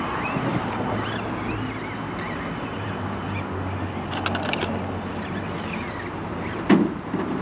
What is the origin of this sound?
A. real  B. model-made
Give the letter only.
A